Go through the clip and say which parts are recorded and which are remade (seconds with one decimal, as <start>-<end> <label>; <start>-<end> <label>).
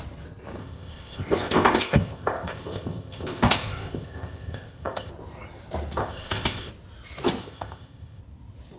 0.0-0.6 recorded; 0.6-5.1 remade; 5.1-6.0 recorded; 6.0-6.7 remade; 6.7-7.4 recorded; 7.4-8.2 remade; 8.2-8.8 recorded